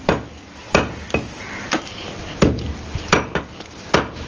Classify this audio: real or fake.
real